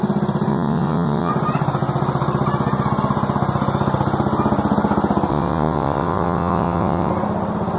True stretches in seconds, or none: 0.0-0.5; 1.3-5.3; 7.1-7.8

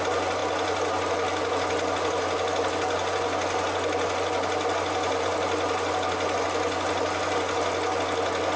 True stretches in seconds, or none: 0.0-8.6

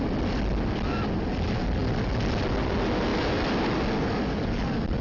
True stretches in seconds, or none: 0.0-5.0

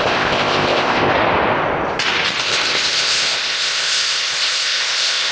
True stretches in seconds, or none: 1.1-2.4

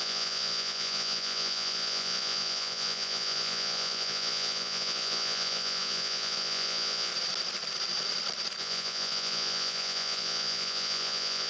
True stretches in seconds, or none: 7.1-8.6

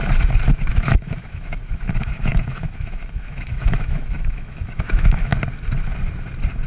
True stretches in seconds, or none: 0.0-0.7; 5.3-6.7

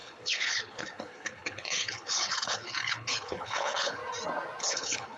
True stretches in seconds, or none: 4.0-4.6